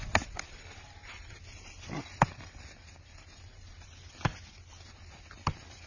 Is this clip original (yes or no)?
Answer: yes